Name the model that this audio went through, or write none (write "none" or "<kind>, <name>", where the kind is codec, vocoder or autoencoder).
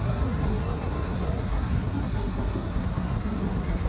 codec, SNAC